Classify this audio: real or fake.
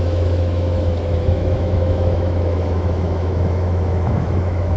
fake